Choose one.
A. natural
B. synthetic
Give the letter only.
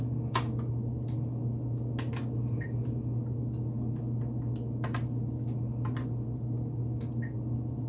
A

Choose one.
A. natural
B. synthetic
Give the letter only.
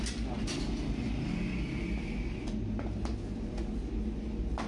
A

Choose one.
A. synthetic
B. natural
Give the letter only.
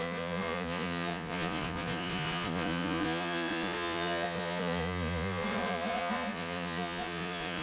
A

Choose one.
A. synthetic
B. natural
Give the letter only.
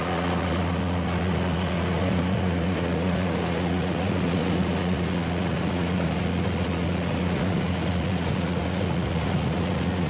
A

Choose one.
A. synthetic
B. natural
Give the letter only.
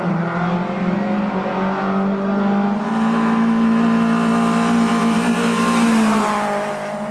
B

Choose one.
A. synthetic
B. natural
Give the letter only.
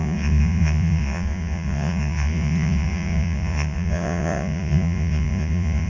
A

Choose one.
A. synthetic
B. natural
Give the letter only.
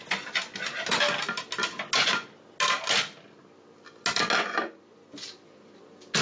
B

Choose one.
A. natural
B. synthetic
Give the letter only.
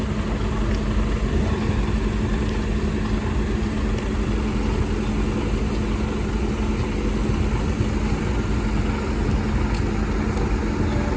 A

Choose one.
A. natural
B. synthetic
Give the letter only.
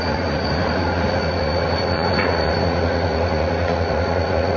B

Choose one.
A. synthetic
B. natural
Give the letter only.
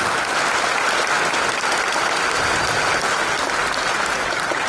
B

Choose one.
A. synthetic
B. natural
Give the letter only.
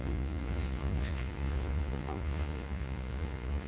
A